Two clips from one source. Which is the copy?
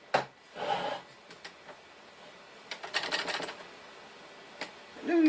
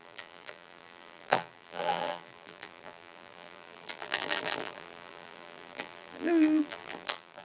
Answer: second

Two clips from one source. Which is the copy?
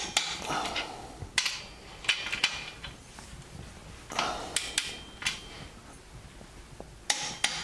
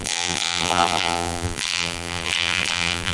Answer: second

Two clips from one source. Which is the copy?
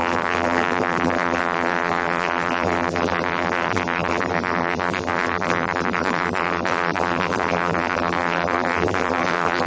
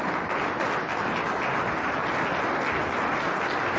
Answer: first